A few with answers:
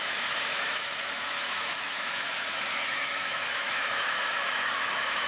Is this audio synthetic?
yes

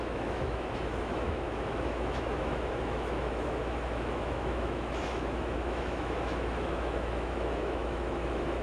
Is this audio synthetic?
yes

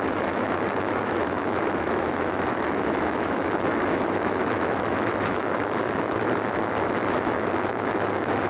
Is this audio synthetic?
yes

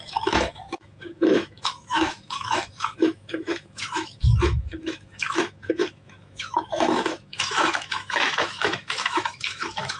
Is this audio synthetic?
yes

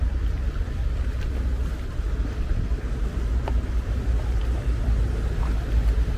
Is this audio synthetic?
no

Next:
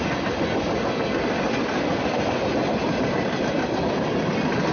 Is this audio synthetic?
no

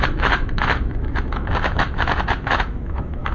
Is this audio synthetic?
yes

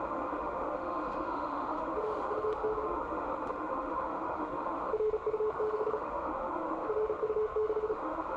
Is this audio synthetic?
yes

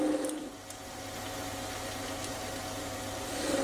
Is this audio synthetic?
no